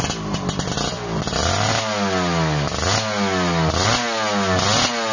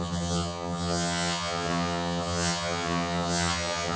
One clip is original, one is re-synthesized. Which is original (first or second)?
first